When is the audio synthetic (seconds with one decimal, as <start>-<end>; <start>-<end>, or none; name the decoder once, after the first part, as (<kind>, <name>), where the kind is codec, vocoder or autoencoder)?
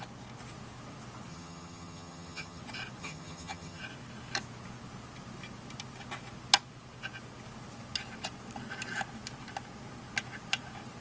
1.3-2.6 (vocoder, HiFi-GAN); 3.0-3.8